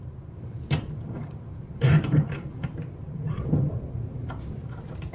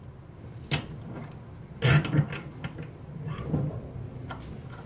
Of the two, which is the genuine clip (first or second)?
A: second